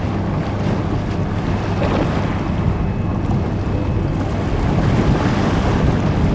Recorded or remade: recorded